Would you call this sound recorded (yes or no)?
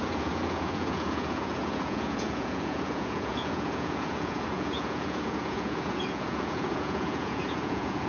no